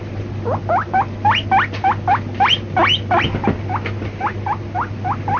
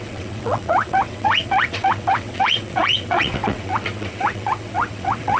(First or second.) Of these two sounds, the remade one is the second